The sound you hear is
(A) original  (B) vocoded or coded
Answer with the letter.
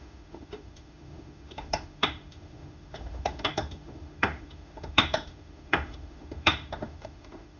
B